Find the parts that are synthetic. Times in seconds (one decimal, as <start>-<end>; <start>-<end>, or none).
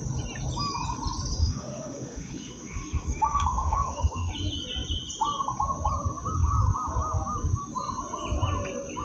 1.4-4.3